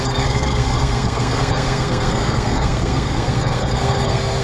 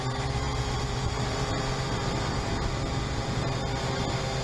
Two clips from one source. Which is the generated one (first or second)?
first